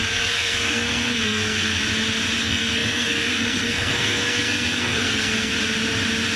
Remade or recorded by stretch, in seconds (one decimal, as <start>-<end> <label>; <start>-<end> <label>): 0.0-1.8 remade; 1.8-2.4 recorded; 2.4-5.5 remade; 5.5-6.4 recorded